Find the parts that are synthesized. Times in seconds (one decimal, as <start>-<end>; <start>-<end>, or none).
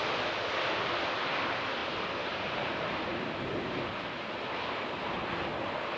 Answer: 1.8-5.3